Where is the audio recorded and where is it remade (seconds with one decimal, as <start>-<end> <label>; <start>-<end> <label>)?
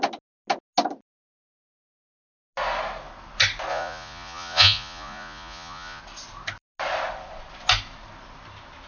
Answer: 0.0-3.7 recorded; 3.7-6.0 remade; 6.0-8.9 recorded